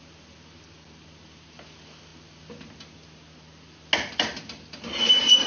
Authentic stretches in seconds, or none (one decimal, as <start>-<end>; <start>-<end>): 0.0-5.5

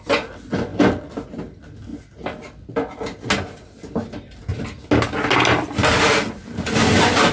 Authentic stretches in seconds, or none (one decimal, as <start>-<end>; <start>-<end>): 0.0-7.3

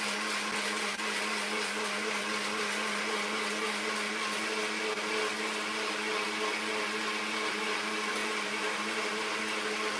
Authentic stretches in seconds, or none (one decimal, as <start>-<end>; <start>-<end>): 0.0-8.2; 9.4-10.0

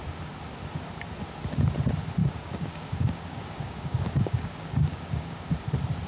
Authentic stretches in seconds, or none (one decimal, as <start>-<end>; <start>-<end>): 0.0-2.2; 5.5-6.1